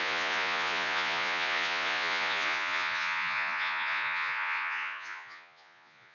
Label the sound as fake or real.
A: fake